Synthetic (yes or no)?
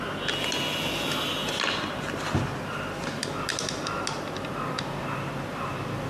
no